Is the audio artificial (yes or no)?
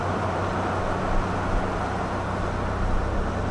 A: no